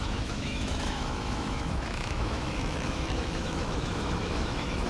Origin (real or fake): fake